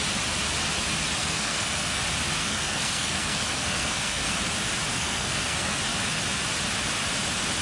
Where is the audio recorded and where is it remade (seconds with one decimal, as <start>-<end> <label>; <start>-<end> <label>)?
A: 0.0-1.2 recorded; 1.2-2.0 remade; 2.0-2.4 recorded; 2.4-4.4 remade; 4.4-4.9 recorded; 4.9-5.8 remade; 5.8-7.6 recorded

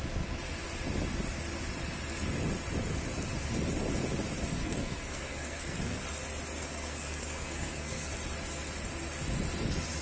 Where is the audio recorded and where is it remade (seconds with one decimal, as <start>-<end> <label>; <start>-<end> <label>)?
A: 0.0-4.6 recorded; 4.6-6.0 remade; 6.0-6.6 recorded; 6.6-8.1 remade; 8.1-10.0 recorded

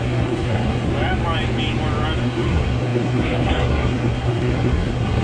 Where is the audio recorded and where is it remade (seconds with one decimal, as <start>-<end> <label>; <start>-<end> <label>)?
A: 0.0-0.9 remade; 0.9-2.2 recorded; 2.2-5.2 remade

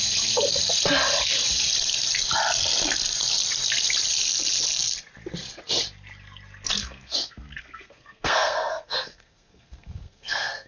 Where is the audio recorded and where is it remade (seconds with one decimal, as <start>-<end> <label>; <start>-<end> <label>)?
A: 0.0-6.8 recorded; 6.8-10.7 remade